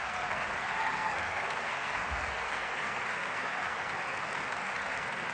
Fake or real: fake